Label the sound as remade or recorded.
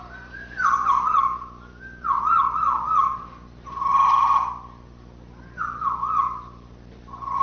recorded